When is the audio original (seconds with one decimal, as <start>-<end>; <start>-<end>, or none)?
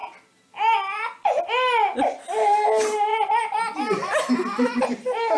0.0-5.4